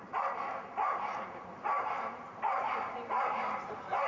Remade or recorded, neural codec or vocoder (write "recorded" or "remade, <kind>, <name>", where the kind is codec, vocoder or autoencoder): remade, vocoder, BigVGAN v2